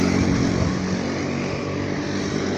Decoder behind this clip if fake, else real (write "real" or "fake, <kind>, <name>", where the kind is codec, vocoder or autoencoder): real